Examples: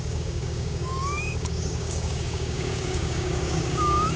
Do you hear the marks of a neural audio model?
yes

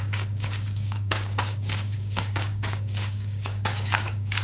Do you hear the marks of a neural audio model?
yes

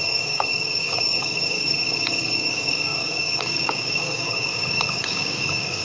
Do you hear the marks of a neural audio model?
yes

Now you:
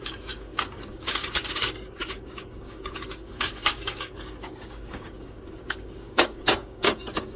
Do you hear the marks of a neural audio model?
yes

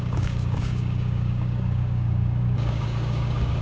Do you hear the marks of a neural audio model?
yes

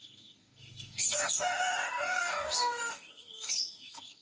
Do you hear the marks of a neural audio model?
yes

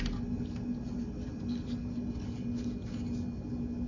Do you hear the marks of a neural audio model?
no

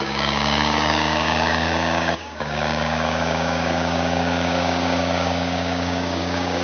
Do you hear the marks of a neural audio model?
yes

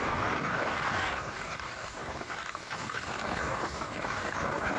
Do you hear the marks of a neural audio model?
yes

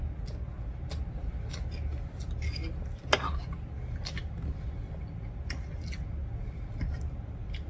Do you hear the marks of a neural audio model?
no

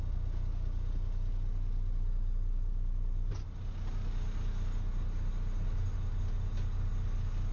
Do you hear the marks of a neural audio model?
no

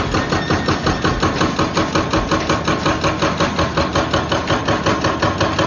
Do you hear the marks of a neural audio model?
no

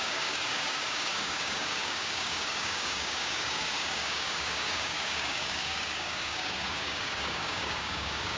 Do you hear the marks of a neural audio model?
yes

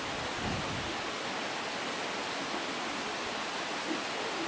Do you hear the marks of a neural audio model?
no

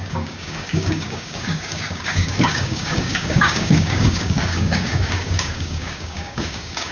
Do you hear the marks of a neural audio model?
yes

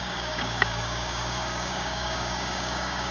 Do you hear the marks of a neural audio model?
yes